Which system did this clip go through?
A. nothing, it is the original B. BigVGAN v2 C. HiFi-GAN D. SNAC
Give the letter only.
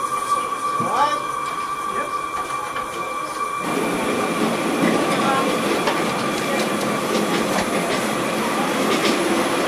A